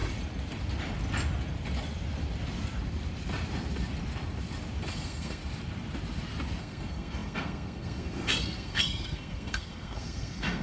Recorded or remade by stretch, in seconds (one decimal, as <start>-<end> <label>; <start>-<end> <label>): 0.0-4.9 recorded; 4.9-5.4 remade; 5.4-6.6 recorded; 6.6-10.6 remade